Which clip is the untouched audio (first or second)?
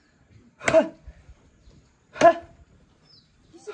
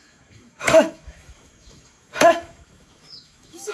first